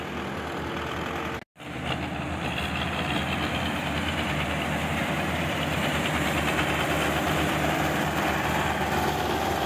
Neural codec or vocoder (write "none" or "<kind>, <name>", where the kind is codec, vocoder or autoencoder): none